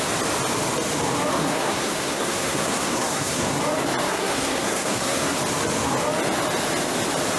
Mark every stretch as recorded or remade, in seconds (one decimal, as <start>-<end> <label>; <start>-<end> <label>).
0.0-1.3 recorded; 1.3-3.6 remade; 3.6-4.1 recorded; 4.1-5.4 remade; 5.4-7.4 recorded